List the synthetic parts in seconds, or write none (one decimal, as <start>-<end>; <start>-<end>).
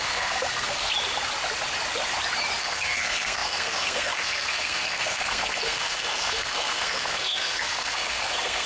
0.0-0.9; 2.6-8.7